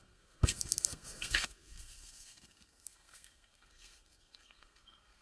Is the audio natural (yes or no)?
no